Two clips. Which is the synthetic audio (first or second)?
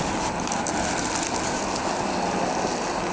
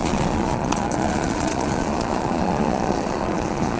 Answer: second